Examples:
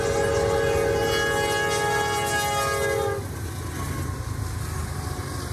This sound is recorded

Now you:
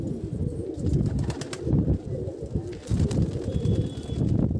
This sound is remade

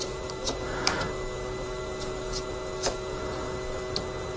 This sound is recorded